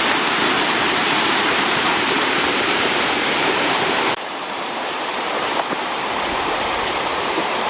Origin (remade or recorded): remade